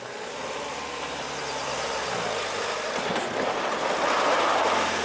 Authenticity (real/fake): real